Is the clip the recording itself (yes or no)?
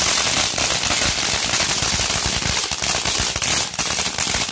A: yes